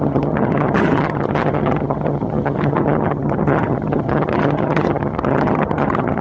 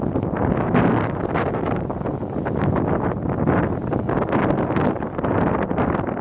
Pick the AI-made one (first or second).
first